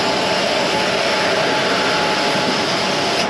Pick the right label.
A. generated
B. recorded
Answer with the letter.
B